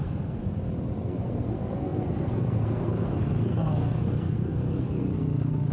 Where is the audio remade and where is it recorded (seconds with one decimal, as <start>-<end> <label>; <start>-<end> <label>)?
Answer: 0.0-0.4 remade; 0.4-1.0 recorded; 1.0-5.7 remade